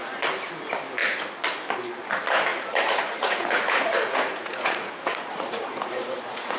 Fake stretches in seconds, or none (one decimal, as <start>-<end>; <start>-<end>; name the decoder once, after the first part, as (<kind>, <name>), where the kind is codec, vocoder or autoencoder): 2.5-6.6 (vocoder, Vocos)